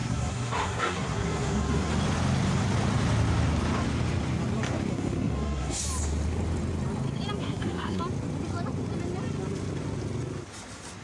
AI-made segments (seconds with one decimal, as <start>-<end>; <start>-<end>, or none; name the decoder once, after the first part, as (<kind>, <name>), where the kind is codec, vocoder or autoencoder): 0.0-1.9 (codec, SNAC); 4.9-5.8; 7.4-8.0

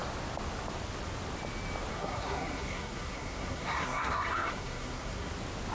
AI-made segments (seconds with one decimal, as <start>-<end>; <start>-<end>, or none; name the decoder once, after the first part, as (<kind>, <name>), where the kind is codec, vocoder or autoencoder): 1.9-5.3 (codec, SNAC)

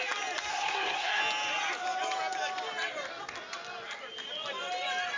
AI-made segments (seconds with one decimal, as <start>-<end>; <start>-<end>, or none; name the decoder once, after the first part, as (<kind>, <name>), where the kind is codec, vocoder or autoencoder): 0.5-1.2 (codec, SNAC)